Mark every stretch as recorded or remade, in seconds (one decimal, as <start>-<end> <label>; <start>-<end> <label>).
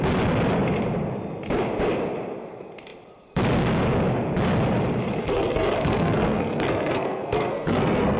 0.0-5.2 recorded; 5.2-8.2 remade